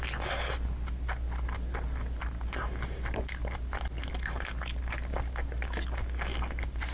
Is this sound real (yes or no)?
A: yes